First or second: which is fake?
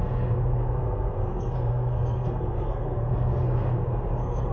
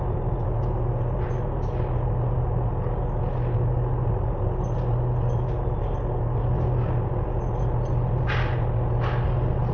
first